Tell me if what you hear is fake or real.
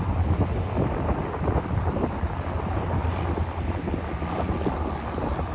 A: real